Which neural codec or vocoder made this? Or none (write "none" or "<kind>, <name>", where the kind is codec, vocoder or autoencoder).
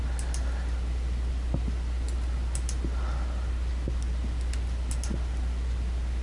none